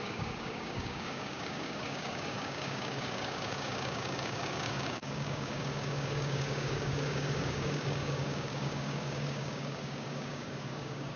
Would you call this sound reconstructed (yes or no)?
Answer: yes